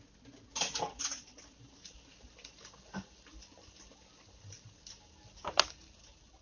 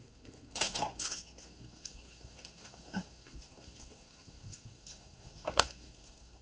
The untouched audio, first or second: first